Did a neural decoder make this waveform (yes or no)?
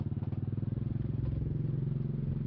no